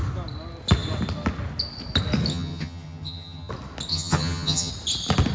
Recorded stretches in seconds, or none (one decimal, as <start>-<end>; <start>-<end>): 0.0-2.3; 3.5-3.9; 4.7-5.3